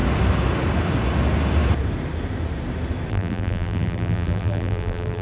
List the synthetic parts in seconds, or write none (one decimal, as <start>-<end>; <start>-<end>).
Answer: 3.1-5.2